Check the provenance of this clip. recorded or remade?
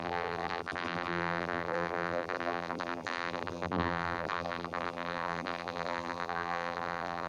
remade